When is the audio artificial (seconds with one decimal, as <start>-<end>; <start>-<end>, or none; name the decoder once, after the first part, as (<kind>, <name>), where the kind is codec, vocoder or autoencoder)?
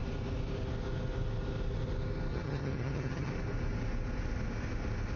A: 2.3-3.3 (vocoder, HiFi-GAN)